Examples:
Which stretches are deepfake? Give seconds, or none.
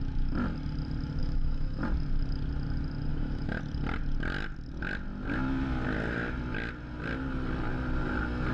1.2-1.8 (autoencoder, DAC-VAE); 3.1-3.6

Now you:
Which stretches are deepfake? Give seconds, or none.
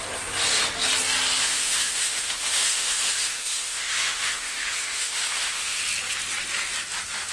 1.4-5.8 (autoencoder, DAC-VAE)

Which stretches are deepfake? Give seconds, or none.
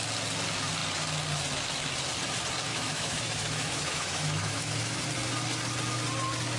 2.7-5.0 (autoencoder, DAC-VAE)